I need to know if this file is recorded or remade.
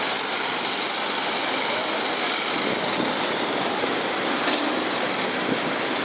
recorded